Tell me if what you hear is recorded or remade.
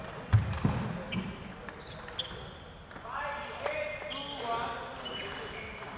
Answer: recorded